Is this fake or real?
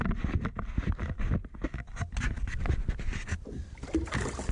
real